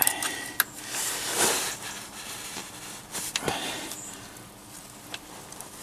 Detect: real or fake real